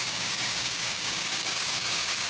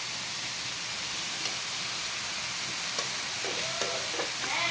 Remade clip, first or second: first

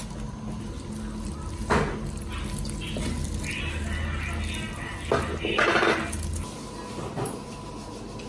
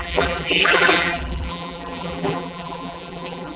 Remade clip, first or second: second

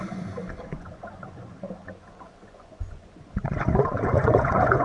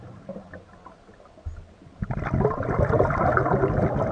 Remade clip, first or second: first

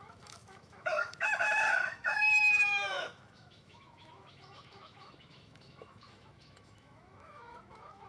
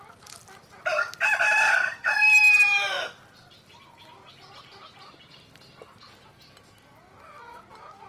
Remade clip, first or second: first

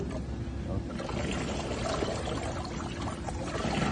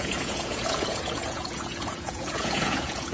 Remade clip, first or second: second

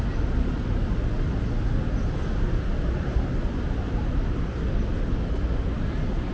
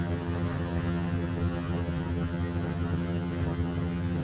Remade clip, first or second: second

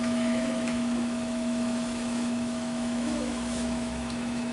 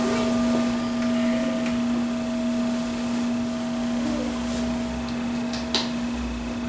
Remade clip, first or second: first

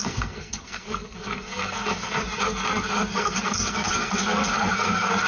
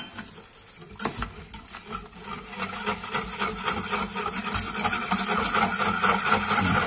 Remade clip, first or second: first